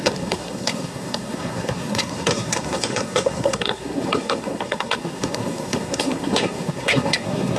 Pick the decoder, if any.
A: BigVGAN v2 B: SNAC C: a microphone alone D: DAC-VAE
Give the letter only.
B